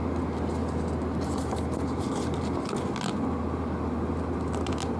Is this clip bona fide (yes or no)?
yes